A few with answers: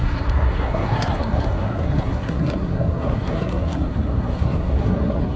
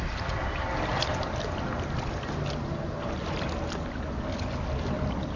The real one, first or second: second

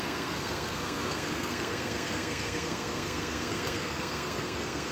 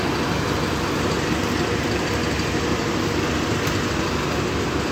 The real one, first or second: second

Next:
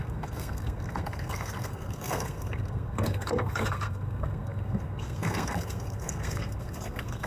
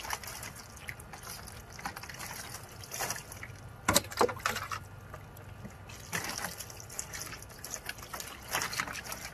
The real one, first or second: second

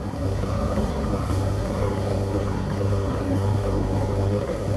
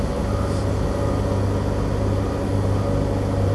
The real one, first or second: second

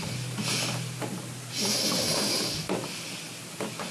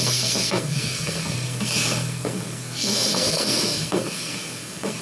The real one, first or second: first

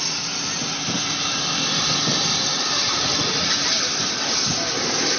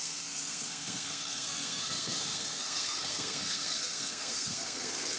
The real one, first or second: first